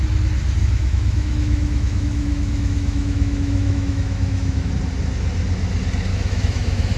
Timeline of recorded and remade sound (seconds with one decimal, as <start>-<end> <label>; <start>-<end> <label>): 0.0-0.6 recorded; 0.6-4.7 remade; 4.7-6.1 recorded; 6.1-7.0 remade

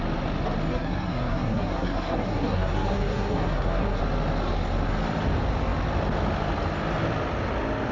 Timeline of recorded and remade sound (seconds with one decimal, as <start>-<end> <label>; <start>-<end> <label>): 0.0-0.7 recorded; 0.7-4.0 remade; 4.0-7.9 recorded

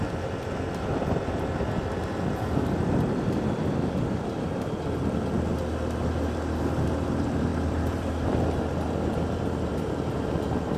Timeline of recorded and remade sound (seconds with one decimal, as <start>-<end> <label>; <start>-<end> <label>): 0.0-7.5 recorded; 7.5-8.7 remade; 8.7-10.8 recorded

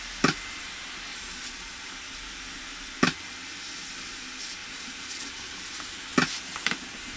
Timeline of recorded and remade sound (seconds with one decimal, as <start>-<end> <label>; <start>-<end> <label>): 0.0-1.1 recorded; 1.1-1.9 remade; 1.9-4.6 recorded; 4.6-5.6 remade; 5.6-7.2 recorded

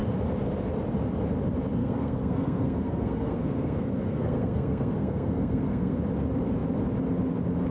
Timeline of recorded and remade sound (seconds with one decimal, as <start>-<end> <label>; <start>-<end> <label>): 0.0-1.8 recorded; 1.8-6.0 remade; 6.0-7.7 recorded

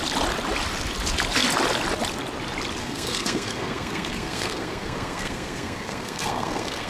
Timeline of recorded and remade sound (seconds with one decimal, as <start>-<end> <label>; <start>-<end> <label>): 0.0-2.8 recorded; 2.8-6.9 remade

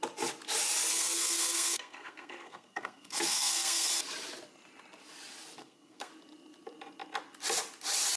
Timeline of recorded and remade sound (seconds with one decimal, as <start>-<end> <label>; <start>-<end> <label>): 0.0-0.9 recorded; 0.9-3.9 remade; 3.9-5.6 recorded; 5.6-6.1 remade; 6.1-8.2 recorded